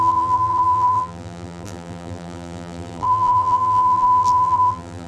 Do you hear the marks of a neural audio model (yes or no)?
yes